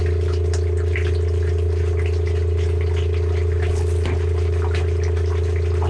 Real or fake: real